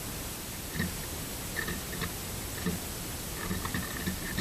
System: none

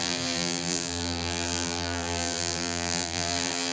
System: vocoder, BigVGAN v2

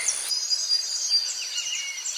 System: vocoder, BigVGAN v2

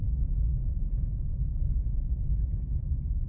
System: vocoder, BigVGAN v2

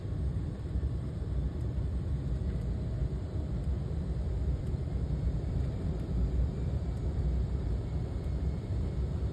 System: vocoder, BigVGAN v2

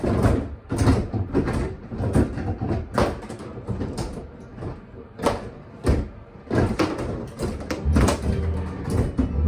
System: none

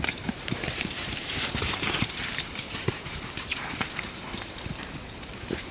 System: vocoder, BigVGAN v2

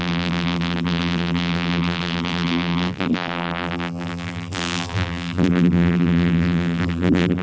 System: vocoder, BigVGAN v2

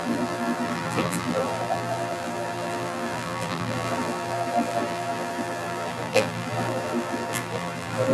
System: vocoder, BigVGAN v2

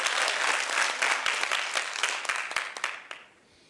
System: none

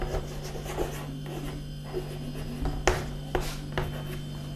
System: none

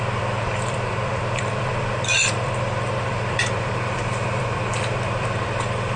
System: vocoder, BigVGAN v2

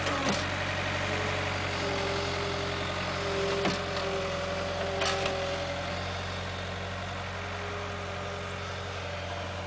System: none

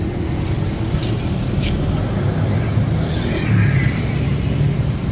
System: none